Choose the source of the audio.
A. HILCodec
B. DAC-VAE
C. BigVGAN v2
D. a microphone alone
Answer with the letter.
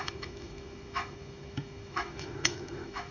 B